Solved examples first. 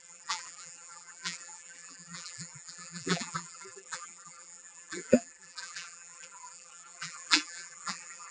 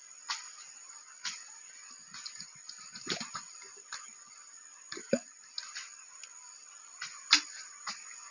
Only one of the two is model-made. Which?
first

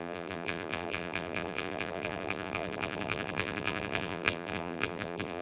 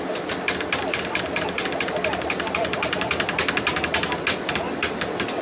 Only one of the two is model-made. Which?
first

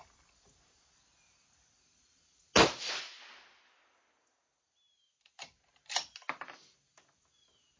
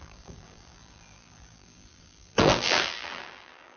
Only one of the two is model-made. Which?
second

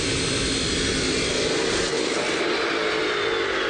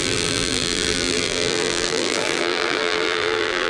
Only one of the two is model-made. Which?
second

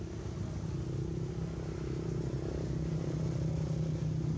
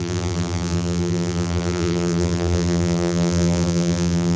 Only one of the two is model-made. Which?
second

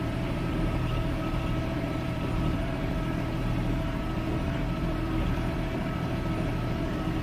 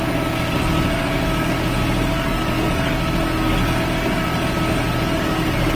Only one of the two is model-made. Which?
first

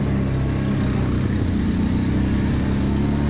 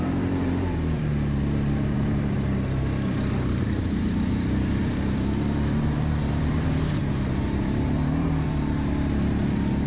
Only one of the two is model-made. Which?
second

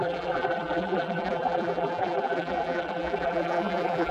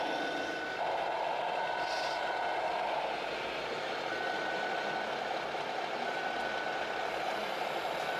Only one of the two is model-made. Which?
first